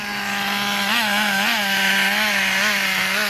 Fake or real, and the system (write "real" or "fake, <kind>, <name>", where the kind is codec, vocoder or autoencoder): real